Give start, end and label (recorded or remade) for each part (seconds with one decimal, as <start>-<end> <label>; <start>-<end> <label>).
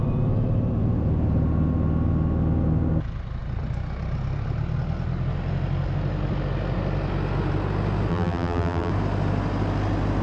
0.0-8.1 recorded; 8.1-8.9 remade; 8.9-10.2 recorded